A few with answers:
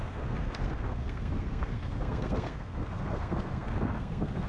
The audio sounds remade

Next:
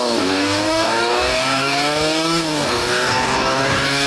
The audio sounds remade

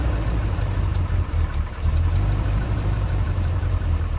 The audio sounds remade